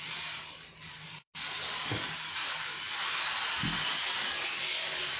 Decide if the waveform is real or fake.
real